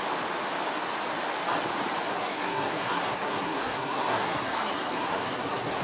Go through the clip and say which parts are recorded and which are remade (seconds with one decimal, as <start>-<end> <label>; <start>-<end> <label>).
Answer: 0.0-2.1 recorded; 2.1-5.8 remade